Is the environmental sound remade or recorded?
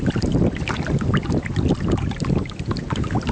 recorded